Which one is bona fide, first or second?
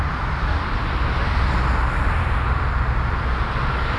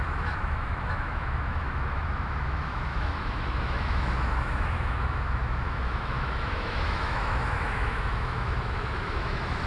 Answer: first